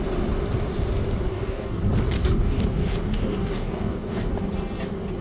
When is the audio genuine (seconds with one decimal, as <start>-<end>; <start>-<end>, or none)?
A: 0.0-1.3; 1.8-2.2; 4.3-5.2